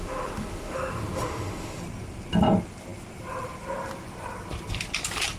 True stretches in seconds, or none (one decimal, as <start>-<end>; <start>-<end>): 1.8-5.4